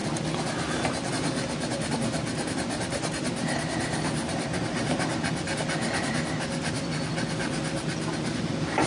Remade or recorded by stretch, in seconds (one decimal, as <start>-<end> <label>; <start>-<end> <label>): 0.0-1.1 recorded; 1.1-5.1 remade; 5.1-8.9 recorded